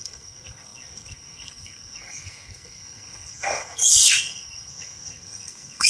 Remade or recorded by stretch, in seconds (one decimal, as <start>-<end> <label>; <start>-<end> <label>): 0.0-5.9 remade